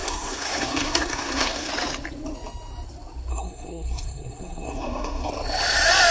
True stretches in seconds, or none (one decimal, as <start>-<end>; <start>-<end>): 1.7-3.3; 5.3-6.1